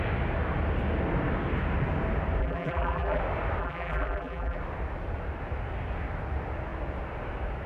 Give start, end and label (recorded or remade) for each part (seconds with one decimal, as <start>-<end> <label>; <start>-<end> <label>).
0.0-2.4 recorded; 2.4-3.2 remade; 3.2-3.6 recorded; 3.6-4.6 remade; 4.6-7.7 recorded